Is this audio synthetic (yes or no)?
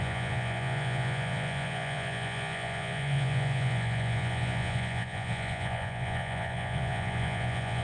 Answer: yes